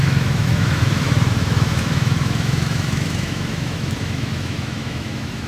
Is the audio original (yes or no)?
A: no